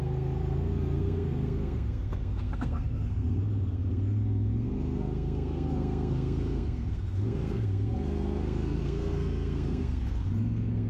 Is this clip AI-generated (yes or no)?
yes